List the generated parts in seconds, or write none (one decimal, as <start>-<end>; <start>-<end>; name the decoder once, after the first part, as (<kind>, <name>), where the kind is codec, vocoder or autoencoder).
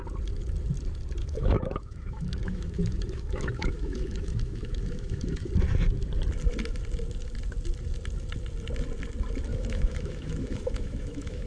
1.2-5.5 (autoencoder, DAC-VAE); 9.5-11.5